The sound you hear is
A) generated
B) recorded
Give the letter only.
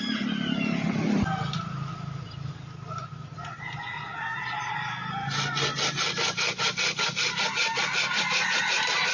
B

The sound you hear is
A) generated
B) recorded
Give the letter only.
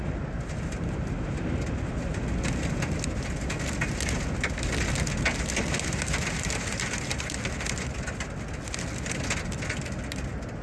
B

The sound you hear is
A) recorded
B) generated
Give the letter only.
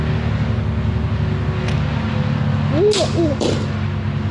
A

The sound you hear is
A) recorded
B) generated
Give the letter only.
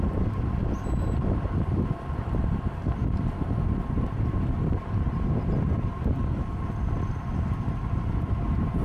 A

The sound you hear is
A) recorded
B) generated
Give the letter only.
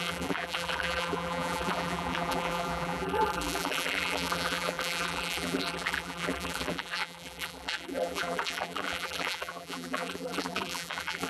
B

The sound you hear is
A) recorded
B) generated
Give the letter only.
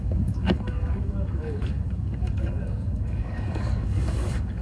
B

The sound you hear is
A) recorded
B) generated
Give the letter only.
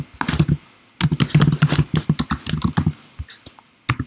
A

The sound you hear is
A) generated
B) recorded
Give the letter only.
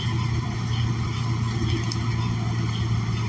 B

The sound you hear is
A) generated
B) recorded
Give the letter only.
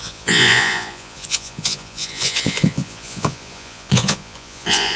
A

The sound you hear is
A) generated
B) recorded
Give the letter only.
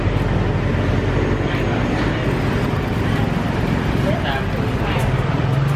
B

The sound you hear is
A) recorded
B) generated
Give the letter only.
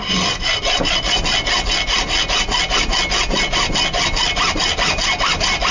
A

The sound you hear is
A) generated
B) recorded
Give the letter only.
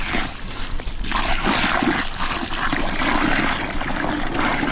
B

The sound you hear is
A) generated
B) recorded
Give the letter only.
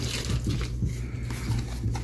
B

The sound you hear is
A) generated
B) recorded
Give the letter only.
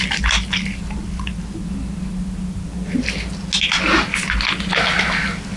B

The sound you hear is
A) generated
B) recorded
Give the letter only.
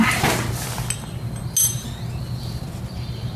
B